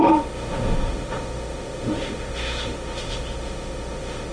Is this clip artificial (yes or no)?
yes